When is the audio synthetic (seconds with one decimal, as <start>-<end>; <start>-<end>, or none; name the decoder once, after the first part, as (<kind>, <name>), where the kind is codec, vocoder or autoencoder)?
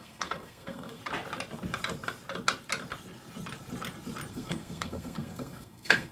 0.0-1.0 (codec, SNAC); 4.3-6.1